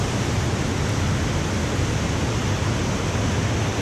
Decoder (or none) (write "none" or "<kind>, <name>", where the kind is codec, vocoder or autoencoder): none